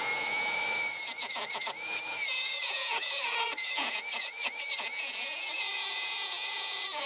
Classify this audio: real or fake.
fake